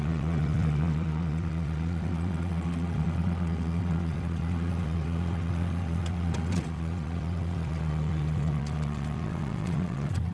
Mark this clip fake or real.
fake